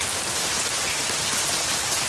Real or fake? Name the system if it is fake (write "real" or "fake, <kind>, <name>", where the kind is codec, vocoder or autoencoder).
fake, vocoder, BigVGAN v2